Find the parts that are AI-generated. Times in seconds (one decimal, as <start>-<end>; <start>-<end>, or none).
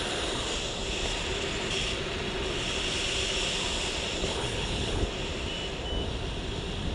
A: 4.3-5.0